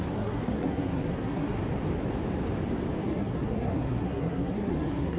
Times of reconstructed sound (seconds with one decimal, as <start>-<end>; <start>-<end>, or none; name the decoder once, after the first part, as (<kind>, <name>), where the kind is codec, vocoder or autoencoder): 0.0-1.6 (codec, SNAC); 3.0-5.2